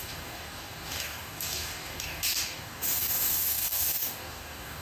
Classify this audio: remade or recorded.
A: remade